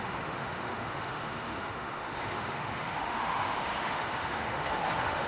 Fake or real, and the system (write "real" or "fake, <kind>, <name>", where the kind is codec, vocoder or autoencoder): fake, autoencoder, DAC-VAE